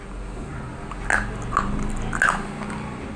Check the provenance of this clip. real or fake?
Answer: real